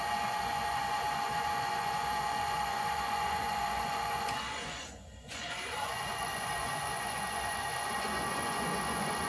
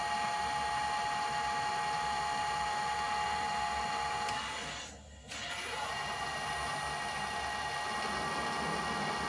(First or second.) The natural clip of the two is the second